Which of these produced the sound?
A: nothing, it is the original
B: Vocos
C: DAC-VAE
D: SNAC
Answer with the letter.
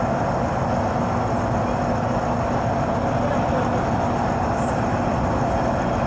A